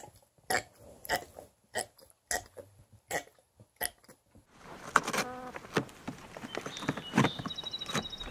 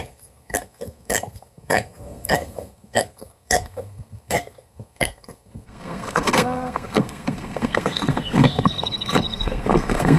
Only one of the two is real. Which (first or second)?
first